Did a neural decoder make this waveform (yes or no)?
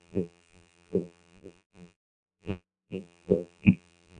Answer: yes